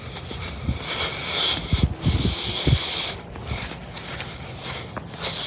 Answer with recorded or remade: recorded